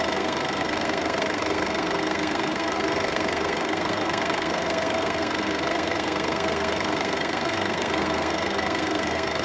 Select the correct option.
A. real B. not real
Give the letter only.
B